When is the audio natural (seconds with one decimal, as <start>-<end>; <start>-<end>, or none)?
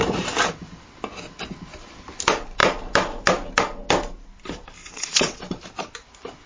0.0-4.8; 5.4-6.5